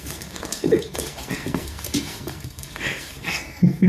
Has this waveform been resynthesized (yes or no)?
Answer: yes